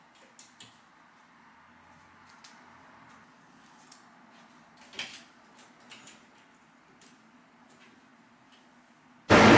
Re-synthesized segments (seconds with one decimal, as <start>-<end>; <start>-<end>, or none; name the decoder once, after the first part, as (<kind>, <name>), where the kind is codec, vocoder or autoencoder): none